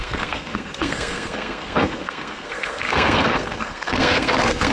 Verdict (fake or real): fake